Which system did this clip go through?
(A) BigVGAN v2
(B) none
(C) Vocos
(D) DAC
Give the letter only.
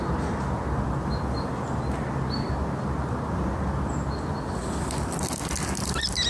B